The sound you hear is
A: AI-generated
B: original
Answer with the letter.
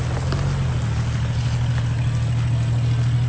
B